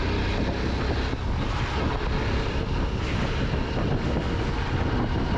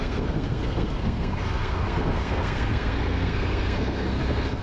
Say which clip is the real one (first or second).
first